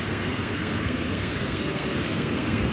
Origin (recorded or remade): remade